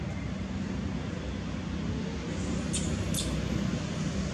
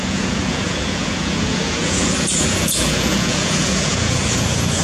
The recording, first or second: first